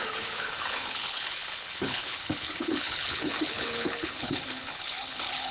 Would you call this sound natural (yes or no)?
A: no